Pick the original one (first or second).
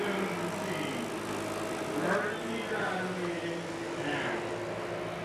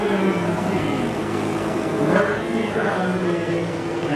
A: first